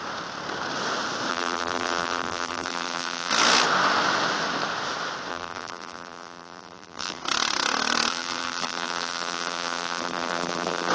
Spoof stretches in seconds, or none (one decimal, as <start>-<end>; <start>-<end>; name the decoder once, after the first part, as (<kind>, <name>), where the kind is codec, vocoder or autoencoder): 1.3-3.3 (vocoder, BigVGAN v2); 5.3-7.2; 8.1-10.9